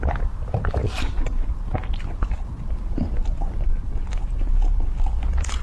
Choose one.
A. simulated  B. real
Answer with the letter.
B